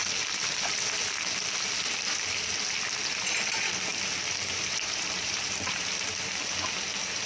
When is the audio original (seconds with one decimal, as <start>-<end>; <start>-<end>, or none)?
0.0-3.9; 5.9-7.3